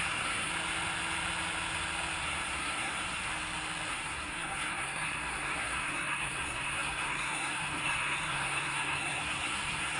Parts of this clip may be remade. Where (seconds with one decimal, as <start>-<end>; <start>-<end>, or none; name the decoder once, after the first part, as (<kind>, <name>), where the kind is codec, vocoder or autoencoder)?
0.0-0.5 (codec, SNAC); 2.2-3.3; 3.9-10.0